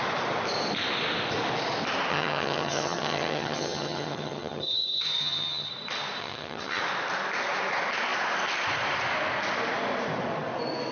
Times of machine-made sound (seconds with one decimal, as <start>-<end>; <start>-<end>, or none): 2.1-5.7; 6.2-6.8